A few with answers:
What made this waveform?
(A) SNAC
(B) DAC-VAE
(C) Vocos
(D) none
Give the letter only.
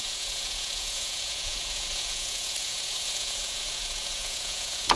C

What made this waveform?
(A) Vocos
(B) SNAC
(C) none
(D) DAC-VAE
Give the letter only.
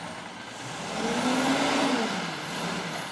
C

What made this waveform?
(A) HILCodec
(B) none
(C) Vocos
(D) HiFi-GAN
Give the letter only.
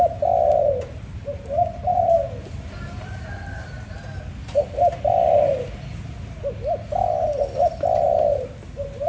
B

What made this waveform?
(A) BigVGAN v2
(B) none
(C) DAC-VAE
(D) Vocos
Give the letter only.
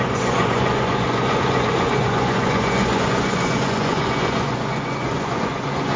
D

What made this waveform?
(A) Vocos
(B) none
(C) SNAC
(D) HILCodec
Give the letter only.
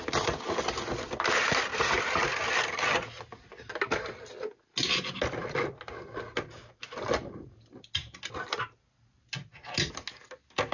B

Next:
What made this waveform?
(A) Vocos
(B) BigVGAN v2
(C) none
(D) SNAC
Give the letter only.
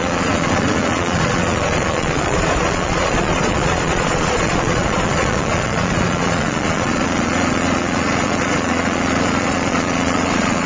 A